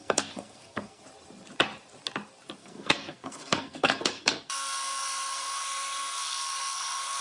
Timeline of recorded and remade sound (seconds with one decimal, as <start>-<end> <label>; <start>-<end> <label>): 0.0-1.0 remade; 1.0-2.6 recorded; 2.6-7.2 remade